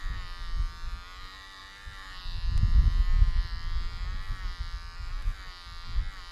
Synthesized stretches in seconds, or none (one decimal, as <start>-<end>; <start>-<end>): none